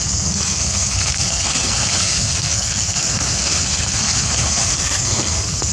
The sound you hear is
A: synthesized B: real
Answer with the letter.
A